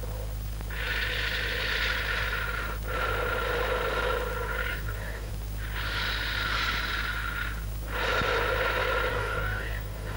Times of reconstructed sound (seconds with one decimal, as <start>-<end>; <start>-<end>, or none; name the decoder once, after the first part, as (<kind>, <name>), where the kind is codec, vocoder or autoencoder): 4.7-5.3 (codec, DAC); 9.1-10.2